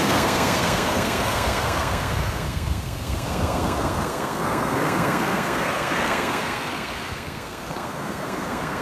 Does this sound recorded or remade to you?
remade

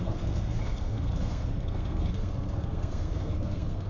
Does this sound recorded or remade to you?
remade